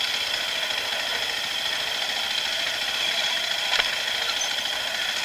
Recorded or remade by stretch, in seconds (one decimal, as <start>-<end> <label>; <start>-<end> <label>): 0.0-1.1 recorded; 1.1-3.1 remade; 3.1-5.2 recorded